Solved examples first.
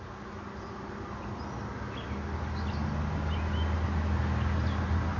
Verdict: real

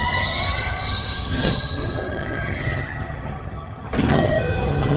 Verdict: fake